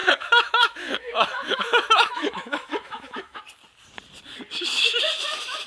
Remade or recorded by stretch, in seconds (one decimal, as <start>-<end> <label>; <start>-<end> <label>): 0.0-3.4 remade; 3.4-5.7 recorded